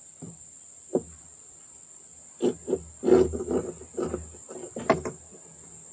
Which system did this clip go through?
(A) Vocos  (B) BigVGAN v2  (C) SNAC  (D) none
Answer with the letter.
D